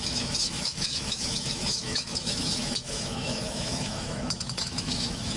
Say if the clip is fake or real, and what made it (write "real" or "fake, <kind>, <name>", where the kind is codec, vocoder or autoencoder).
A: fake, autoencoder, DAC-VAE